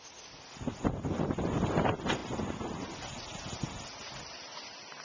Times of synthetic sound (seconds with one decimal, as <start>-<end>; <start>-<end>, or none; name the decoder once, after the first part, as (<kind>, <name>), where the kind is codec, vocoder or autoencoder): none